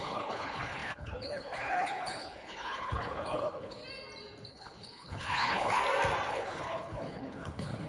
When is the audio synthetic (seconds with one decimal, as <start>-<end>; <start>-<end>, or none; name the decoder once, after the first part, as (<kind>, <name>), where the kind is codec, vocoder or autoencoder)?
0.0-3.8 (codec, HILCodec); 4.5-5.8; 6.3-7.9